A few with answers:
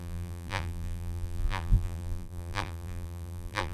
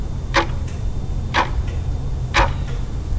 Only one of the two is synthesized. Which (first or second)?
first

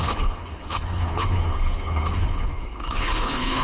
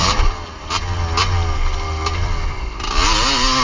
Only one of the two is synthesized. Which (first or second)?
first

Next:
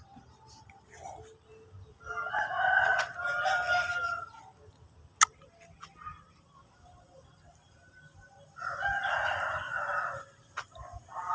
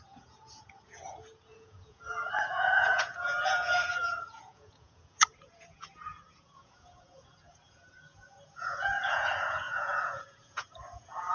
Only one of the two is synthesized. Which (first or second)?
second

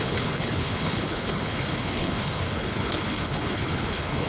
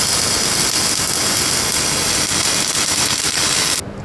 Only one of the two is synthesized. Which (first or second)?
first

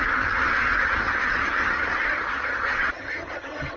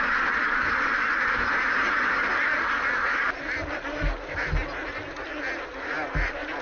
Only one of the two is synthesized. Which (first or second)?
first